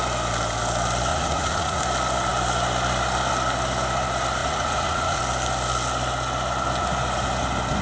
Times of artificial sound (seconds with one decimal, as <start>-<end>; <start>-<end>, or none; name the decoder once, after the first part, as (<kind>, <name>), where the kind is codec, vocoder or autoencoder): 1.1-1.8 (vocoder, Vocos); 4.4-5.2

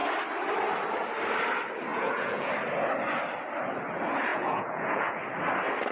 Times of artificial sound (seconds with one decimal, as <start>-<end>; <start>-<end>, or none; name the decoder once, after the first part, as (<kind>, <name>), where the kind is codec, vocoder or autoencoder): 1.9-2.5 (vocoder, Vocos); 4.3-5.2

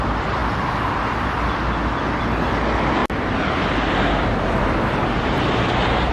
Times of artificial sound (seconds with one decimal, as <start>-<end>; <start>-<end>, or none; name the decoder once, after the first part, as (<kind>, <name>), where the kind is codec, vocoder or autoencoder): none

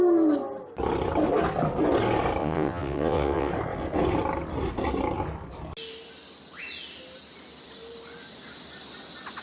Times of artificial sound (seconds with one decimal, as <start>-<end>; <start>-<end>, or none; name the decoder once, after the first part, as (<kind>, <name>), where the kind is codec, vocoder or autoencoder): 2.4-3.5 (vocoder, WaveNeXt)

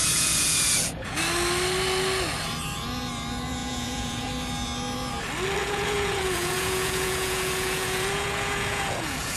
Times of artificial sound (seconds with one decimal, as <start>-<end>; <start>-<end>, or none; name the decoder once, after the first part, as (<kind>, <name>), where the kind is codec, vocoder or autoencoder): 0.0-1.2 (vocoder, Vocos); 3.6-4.3; 5.6-9.4

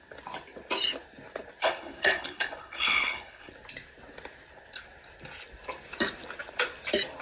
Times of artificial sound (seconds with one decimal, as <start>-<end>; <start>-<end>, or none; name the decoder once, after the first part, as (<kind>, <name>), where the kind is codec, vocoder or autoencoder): 1.6-3.5 (codec, HILCodec)